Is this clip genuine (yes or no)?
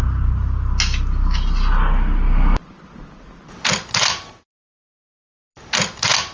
yes